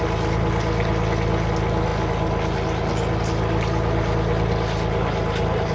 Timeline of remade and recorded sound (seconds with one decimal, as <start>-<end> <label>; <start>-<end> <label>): 0.0-5.7 recorded